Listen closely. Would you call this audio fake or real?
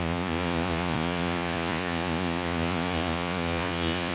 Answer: fake